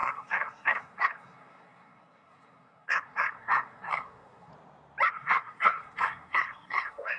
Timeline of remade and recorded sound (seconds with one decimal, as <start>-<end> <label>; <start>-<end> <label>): 0.0-4.5 remade; 4.5-5.1 recorded; 5.1-7.2 remade

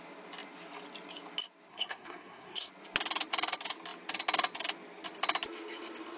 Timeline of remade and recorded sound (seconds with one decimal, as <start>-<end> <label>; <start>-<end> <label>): 0.0-1.7 recorded; 1.7-2.7 remade; 2.7-6.2 recorded

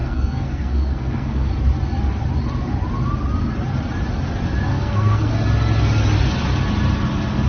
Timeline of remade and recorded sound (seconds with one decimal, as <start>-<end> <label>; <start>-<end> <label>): 0.0-1.5 remade; 1.5-4.7 recorded; 4.7-5.3 remade; 5.3-7.5 recorded

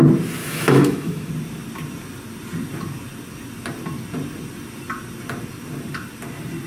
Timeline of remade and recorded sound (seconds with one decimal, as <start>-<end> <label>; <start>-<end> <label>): 0.0-0.4 recorded; 0.4-1.3 remade; 1.3-6.7 recorded

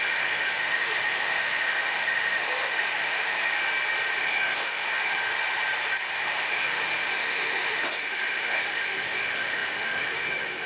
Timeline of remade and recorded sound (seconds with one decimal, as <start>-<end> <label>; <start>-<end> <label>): 0.0-3.6 remade; 3.6-4.2 recorded; 4.2-5.2 remade; 5.2-6.2 recorded; 6.2-10.7 remade

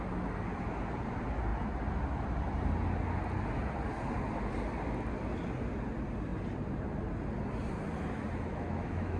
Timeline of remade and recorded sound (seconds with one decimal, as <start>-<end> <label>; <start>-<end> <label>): 0.0-8.5 recorded; 8.5-9.2 remade

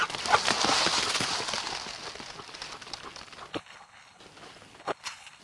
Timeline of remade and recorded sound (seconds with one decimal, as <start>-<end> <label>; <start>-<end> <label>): 0.0-3.5 recorded; 3.5-4.2 remade; 4.2-4.8 recorded; 4.8-5.4 remade

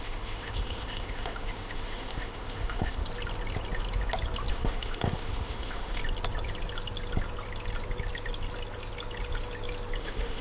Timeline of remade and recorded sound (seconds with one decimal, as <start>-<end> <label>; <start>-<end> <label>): 0.0-3.0 remade; 3.0-4.5 recorded; 4.5-6.0 remade; 6.0-10.0 recorded; 10.0-10.4 remade